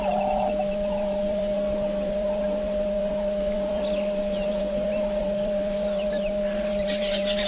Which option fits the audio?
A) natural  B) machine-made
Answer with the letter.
B